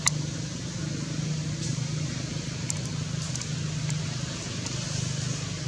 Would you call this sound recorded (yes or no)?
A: yes